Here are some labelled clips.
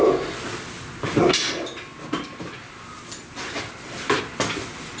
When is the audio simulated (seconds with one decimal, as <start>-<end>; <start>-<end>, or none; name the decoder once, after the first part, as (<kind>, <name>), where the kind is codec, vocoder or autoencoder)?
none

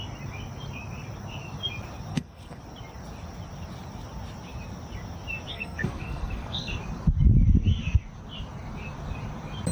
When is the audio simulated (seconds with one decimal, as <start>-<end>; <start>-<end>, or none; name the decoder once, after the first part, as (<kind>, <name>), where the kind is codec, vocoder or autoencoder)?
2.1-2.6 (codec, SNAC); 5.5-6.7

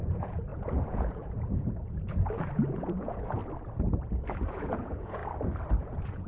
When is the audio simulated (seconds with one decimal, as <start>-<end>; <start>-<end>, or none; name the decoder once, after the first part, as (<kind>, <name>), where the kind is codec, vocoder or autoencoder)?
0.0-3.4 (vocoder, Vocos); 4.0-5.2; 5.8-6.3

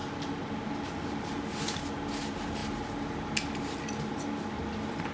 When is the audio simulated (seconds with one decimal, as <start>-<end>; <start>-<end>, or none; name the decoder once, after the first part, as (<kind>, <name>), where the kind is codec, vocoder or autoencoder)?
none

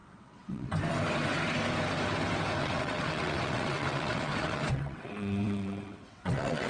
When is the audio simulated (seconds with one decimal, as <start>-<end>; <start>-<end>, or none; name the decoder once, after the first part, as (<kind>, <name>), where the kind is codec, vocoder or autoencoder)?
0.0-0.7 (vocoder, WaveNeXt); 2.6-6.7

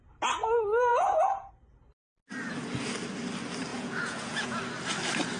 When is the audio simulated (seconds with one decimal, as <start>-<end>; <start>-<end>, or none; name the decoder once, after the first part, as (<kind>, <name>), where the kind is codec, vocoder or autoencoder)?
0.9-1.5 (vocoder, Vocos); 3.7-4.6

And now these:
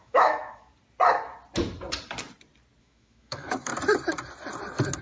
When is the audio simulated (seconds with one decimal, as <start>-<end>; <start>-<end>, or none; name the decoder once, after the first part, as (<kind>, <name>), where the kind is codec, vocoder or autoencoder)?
0.0-0.7 (autoencoder, DAC-VAE); 2.8-3.7

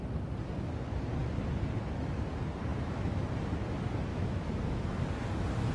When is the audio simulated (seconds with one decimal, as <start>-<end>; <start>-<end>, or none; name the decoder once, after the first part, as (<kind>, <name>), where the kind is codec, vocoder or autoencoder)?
2.7-3.3 (autoencoder, DAC-VAE); 4.1-5.0